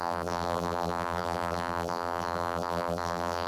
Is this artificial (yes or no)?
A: yes